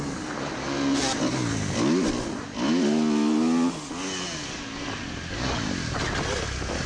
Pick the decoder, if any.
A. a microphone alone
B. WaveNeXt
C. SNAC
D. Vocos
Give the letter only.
A